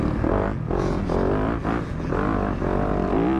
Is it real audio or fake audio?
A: real